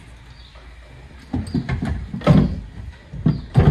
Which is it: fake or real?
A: real